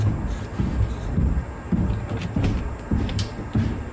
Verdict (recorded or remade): recorded